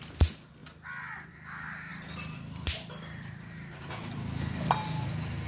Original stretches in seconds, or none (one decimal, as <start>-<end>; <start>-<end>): 0.0-1.9; 4.7-5.5